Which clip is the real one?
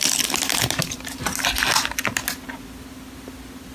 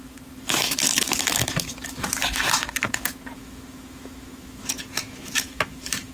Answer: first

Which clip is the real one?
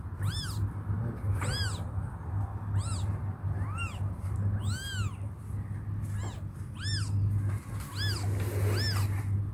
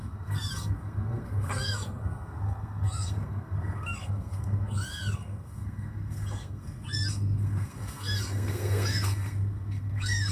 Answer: first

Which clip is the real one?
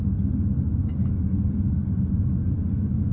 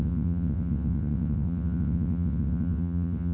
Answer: first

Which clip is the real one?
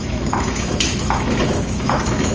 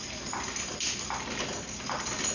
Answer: second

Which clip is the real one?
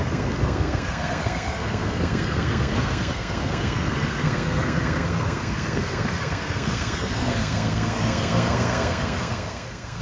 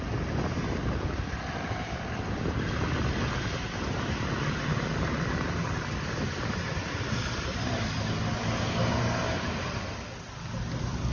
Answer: second